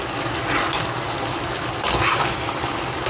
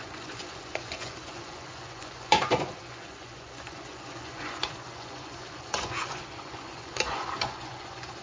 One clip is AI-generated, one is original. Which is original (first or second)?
first